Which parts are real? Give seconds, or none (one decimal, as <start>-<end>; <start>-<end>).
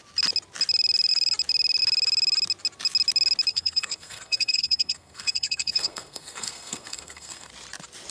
0.0-3.5; 7.5-8.1